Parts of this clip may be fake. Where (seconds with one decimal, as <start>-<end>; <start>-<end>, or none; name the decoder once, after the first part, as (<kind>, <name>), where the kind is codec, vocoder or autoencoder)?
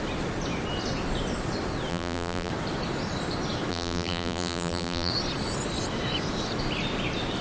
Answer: 1.9-2.5 (vocoder, BigVGAN v2); 3.7-5.1